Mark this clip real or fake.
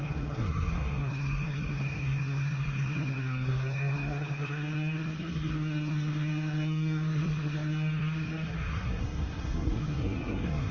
fake